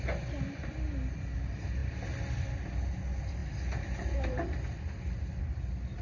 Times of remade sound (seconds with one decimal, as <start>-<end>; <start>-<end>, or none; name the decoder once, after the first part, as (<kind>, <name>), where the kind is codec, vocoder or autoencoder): none